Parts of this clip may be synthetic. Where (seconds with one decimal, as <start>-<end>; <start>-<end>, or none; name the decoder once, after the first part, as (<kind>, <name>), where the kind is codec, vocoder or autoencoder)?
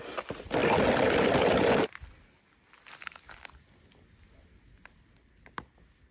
none